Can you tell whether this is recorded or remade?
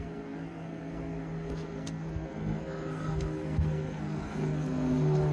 remade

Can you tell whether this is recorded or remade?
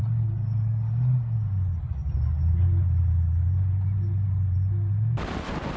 recorded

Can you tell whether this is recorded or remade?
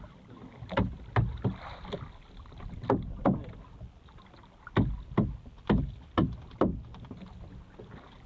recorded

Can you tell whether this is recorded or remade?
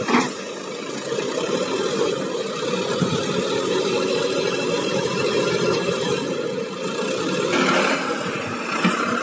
remade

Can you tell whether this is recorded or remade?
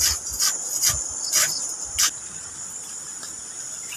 recorded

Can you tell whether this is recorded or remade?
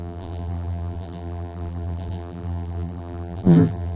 remade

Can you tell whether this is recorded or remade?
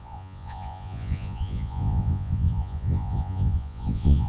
remade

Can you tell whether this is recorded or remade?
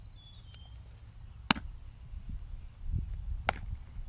recorded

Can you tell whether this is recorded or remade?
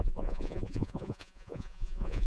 remade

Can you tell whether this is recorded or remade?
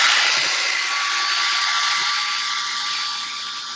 recorded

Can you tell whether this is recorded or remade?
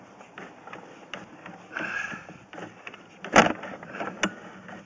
recorded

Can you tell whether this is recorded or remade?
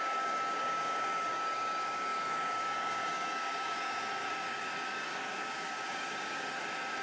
remade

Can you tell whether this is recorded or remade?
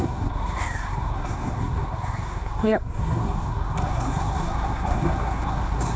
remade